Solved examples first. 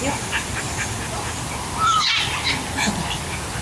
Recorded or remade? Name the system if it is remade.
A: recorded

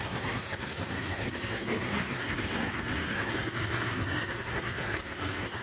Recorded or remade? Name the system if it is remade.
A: remade, codec, SNAC